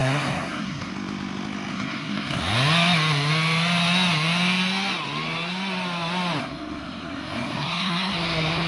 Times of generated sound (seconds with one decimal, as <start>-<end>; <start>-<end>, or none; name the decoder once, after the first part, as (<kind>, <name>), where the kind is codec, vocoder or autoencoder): 0.0-0.9 (codec, SNAC); 1.7-2.4; 6.4-8.7